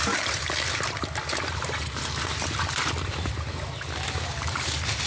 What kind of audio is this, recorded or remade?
recorded